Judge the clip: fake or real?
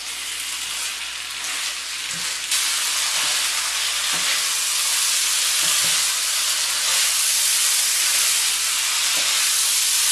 real